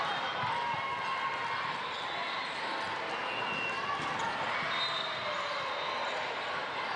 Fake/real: real